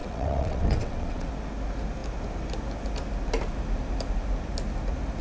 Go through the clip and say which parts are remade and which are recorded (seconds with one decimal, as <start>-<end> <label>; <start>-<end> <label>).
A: 0.0-1.3 remade; 1.3-5.2 recorded